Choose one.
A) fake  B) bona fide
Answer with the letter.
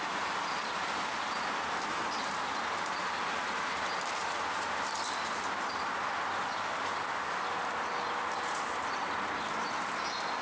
B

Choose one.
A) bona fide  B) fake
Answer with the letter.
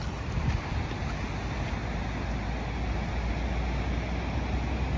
A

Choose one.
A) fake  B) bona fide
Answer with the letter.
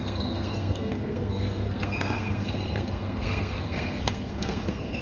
A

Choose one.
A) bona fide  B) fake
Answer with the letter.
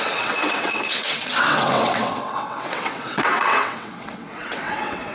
B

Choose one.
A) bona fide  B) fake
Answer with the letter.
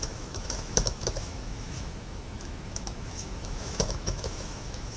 B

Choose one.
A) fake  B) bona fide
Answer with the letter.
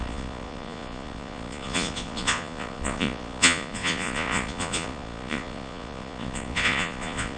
A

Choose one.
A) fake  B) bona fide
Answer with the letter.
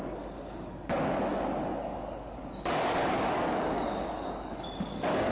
A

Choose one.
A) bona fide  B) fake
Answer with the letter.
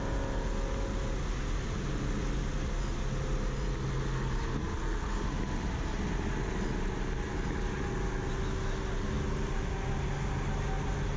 A